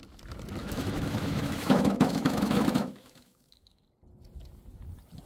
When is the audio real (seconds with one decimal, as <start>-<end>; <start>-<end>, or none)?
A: 0.0-0.6; 3.8-5.3

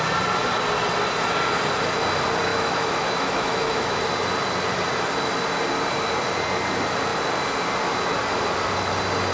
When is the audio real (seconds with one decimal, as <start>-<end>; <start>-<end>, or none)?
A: 0.0-2.5; 4.0-9.3

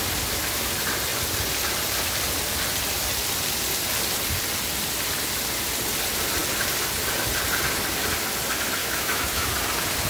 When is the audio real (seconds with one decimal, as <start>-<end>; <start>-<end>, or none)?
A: 0.0-8.8; 9.5-10.1

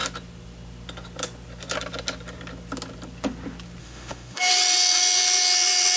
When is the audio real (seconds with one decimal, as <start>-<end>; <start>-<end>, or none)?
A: 0.0-3.8; 4.5-6.0

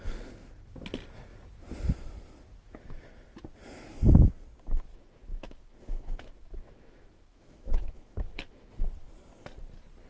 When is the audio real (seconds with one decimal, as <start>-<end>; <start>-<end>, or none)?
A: 0.0-4.9; 8.8-10.1

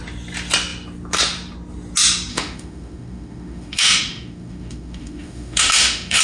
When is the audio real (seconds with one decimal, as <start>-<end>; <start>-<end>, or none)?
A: 0.0-2.3

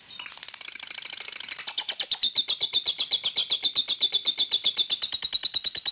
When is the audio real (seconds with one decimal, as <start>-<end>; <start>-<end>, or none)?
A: 0.0-5.9

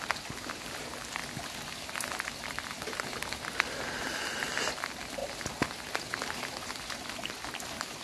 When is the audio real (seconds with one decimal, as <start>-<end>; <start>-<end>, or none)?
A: 0.0-8.0